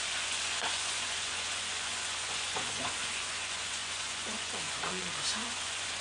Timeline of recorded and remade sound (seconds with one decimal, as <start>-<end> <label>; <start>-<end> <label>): 0.0-6.0 remade